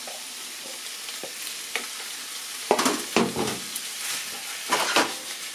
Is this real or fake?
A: fake